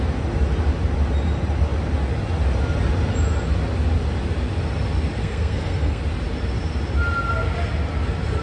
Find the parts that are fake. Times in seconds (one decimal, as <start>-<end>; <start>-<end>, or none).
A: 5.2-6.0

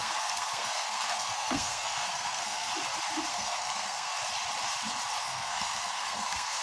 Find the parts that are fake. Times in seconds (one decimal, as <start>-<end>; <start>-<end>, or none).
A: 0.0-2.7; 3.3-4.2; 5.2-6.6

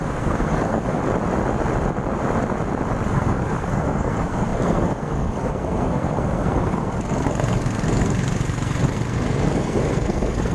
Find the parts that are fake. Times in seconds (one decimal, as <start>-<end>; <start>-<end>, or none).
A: 0.0-1.0; 3.1-10.5

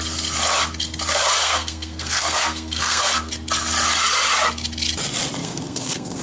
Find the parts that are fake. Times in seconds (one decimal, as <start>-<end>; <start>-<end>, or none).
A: 1.4-3.3; 5.4-6.2

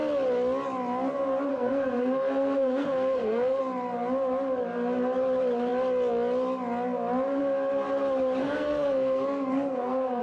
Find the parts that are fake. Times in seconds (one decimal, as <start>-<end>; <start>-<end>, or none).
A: 1.5-3.6; 8.4-10.2

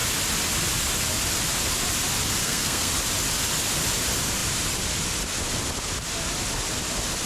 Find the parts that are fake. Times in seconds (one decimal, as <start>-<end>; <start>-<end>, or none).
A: 2.4-2.9

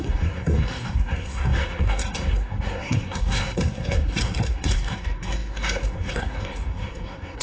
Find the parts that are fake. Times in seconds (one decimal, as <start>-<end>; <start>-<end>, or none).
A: 0.0-7.4